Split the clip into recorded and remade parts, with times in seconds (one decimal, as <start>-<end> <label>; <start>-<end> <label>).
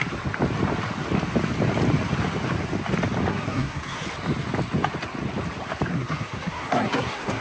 0.0-3.3 recorded; 3.3-4.0 remade; 4.0-5.9 recorded; 5.9-7.4 remade